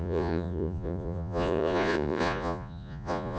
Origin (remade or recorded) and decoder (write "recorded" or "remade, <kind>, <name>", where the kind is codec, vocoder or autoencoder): remade, vocoder, Vocos